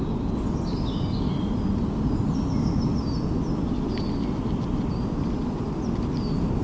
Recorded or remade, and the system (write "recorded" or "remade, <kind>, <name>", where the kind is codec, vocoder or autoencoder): recorded